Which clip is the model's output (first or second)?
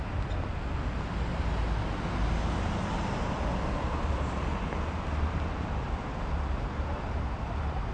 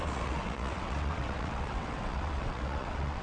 second